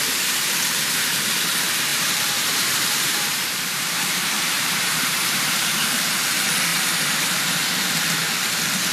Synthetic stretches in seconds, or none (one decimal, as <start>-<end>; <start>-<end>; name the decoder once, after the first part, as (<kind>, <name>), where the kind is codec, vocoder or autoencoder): 1.9-6.1 (vocoder, BigVGAN v2); 6.7-7.5